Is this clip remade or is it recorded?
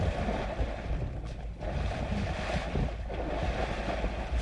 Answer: recorded